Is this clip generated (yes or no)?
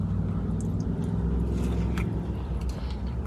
no